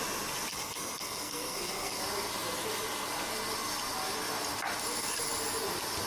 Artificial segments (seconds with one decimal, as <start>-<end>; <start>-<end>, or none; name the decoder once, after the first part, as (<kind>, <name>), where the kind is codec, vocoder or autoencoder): 0.5-2.0 (codec, SNAC)